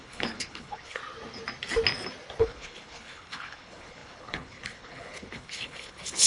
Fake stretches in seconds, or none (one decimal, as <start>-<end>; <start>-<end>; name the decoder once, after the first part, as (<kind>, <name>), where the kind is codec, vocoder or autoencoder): 0.0-1.0 (codec, HILCodec); 2.4-6.3